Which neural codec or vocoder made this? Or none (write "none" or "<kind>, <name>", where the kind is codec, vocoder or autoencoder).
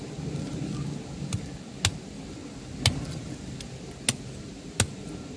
none